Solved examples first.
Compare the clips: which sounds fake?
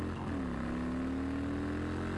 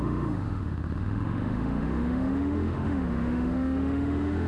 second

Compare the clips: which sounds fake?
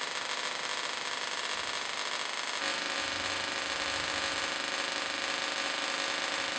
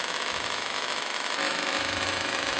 second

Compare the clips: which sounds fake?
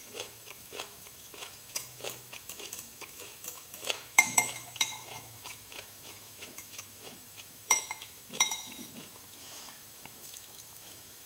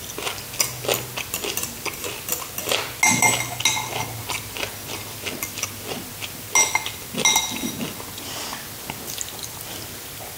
first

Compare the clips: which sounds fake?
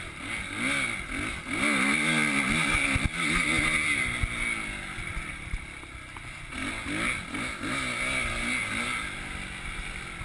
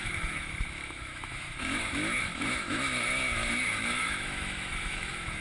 second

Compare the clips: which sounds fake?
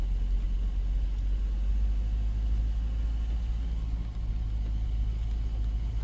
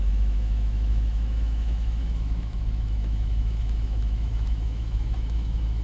second